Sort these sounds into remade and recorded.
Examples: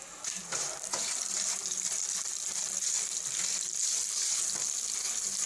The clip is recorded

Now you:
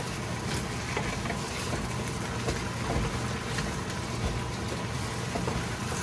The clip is recorded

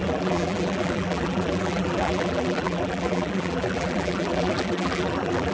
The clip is remade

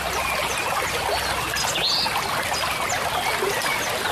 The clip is recorded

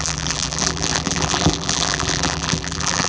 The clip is remade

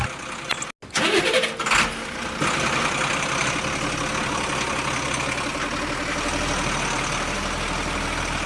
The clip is recorded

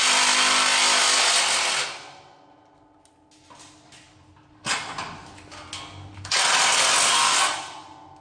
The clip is recorded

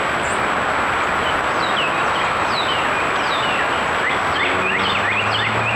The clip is recorded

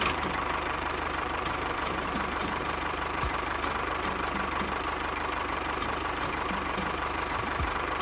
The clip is remade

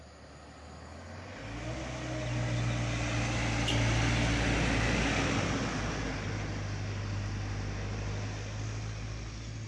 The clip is recorded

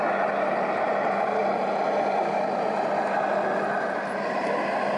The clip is recorded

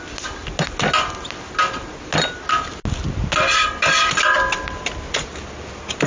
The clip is recorded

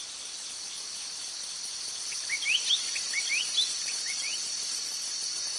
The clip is recorded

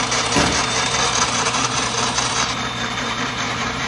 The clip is remade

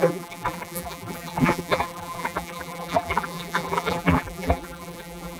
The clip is remade